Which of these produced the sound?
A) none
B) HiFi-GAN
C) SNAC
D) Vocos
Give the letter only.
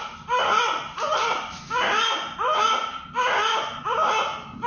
A